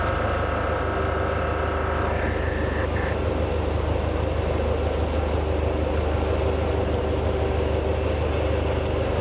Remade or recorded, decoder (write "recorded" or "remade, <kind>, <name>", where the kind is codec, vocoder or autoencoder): recorded